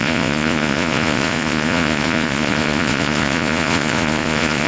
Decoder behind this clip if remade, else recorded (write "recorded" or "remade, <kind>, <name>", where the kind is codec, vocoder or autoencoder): remade, vocoder, Vocos